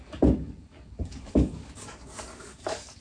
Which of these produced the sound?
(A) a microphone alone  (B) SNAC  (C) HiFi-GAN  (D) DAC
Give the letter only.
D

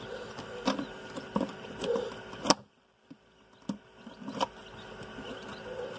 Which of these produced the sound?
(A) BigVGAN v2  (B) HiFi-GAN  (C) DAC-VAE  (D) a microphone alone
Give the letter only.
D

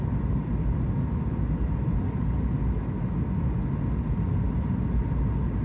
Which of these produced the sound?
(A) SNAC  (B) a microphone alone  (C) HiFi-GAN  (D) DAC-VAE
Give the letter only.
B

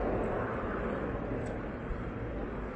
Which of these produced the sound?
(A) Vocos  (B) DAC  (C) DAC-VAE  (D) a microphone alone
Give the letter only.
D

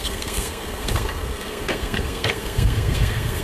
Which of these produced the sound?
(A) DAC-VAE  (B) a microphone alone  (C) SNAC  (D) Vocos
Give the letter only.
C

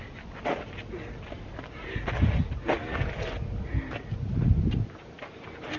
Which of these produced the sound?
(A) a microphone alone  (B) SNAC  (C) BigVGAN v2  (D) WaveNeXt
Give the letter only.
A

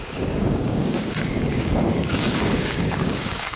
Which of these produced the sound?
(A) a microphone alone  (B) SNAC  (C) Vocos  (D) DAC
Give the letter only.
D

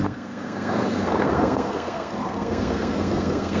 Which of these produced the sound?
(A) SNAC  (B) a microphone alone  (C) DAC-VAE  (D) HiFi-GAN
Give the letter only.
A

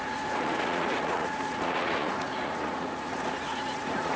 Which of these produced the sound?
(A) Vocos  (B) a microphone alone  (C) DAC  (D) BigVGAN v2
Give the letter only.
A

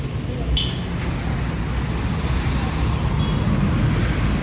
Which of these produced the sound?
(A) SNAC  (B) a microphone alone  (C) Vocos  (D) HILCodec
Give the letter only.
B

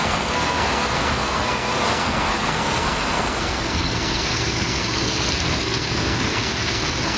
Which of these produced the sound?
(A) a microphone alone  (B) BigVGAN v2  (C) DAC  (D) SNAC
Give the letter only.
D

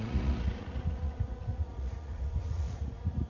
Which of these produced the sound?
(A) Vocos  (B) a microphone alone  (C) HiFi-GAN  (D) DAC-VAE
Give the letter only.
A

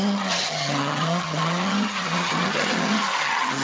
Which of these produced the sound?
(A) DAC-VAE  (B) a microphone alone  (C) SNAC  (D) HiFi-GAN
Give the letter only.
D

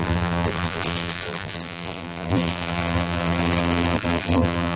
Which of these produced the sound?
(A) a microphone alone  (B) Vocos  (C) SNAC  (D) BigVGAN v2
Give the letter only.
D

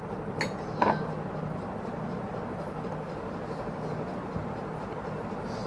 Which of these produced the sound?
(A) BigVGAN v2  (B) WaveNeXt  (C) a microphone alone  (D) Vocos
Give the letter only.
C